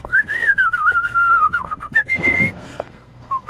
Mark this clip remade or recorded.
remade